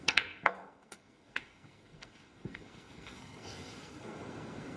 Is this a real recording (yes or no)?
no